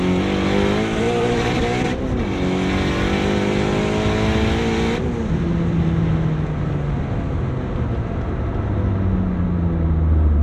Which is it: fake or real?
real